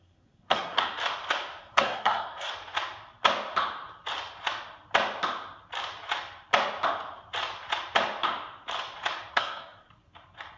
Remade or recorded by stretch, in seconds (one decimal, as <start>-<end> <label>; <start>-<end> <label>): 0.0-0.8 remade; 0.8-1.6 recorded; 1.6-2.5 remade; 2.5-9.3 recorded; 9.3-9.9 remade; 9.9-10.6 recorded